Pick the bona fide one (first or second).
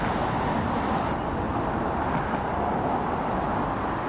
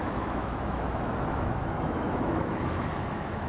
first